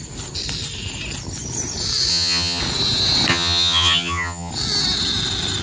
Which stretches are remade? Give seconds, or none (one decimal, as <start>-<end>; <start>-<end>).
2.1-2.6; 3.3-4.5